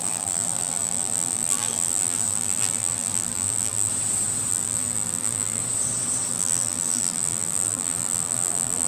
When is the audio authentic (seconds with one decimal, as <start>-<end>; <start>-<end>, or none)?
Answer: 3.9-4.5; 5.6-6.3